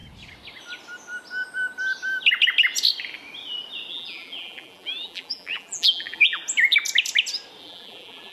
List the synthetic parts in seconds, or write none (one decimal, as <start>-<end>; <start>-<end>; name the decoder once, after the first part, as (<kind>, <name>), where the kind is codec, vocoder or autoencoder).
3.9-6.4 (vocoder, BigVGAN v2); 7.6-8.3